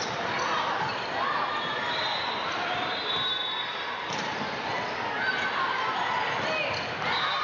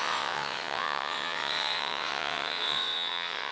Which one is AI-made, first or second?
second